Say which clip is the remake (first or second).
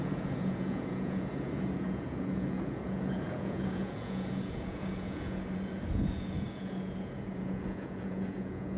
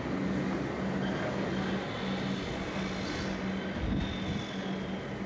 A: first